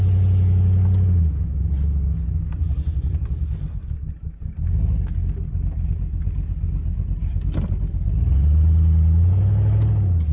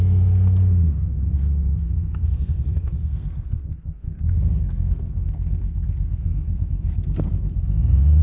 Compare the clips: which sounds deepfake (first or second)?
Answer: second